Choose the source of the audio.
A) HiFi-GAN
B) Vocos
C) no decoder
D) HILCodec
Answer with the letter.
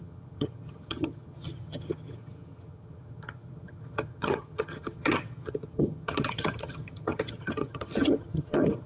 A